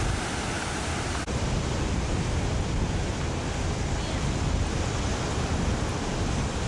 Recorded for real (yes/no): yes